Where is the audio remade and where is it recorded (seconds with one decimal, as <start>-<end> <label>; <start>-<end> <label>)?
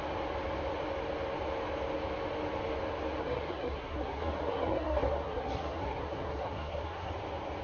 0.0-3.2 recorded; 3.2-7.1 remade; 7.1-7.6 recorded